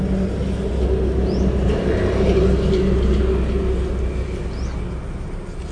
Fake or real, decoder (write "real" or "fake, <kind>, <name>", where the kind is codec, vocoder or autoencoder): real